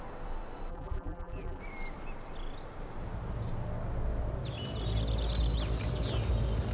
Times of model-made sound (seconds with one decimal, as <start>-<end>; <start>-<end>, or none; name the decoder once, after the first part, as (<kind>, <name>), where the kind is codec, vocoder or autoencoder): 0.7-1.6 (vocoder, BigVGAN v2)